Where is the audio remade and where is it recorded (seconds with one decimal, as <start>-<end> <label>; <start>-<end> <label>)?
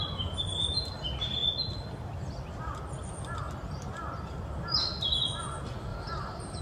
0.0-5.9 recorded; 5.9-6.6 remade